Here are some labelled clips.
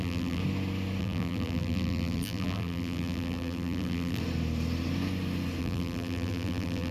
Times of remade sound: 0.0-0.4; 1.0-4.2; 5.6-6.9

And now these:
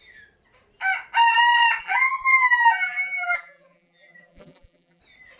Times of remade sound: 1.8-5.0